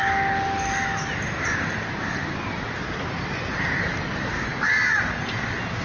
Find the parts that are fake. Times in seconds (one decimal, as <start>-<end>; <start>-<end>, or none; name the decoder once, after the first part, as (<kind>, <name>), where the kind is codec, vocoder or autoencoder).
none